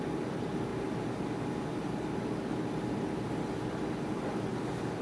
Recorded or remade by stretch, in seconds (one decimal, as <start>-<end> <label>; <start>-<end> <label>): 0.0-0.7 remade; 0.7-3.7 recorded; 3.7-5.0 remade